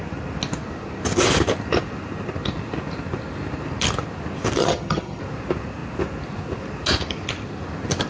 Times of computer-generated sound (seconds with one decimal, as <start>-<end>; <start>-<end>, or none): 4.6-5.2